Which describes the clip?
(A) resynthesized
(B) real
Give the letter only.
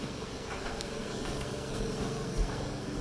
A